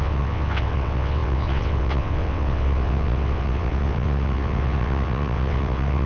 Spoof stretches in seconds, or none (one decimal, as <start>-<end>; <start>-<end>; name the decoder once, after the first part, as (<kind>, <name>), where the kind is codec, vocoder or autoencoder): 0.0-6.1 (vocoder, WaveNeXt)